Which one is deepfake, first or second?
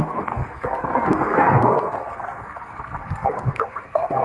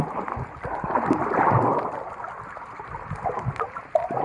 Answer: first